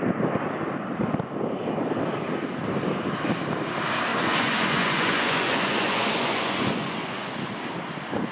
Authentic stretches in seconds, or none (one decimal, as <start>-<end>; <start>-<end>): 0.0-4.1; 7.3-8.3